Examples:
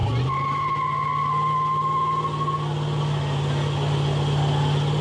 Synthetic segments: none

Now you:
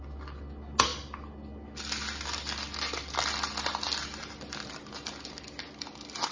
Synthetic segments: none

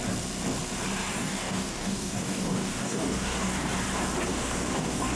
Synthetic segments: 1.1-3.7 (codec, DAC); 4.3-5.2

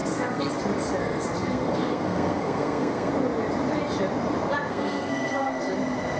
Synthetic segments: 0.0-0.5 (codec, SNAC); 1.0-3.1; 4.7-5.7

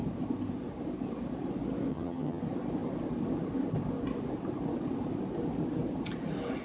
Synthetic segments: 1.9-2.4 (vocoder, HiFi-GAN)